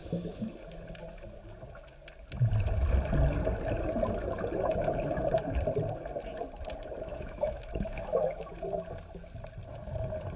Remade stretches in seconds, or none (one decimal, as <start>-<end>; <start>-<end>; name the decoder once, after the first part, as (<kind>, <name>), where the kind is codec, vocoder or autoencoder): 0.0-0.5 (autoencoder, DAC-VAE); 7.1-8.5